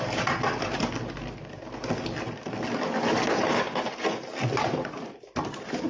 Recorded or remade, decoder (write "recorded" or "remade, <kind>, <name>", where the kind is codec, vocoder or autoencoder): recorded